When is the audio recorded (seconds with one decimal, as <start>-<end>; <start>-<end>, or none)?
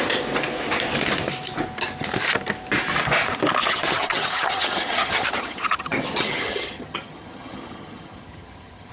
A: 0.0-3.7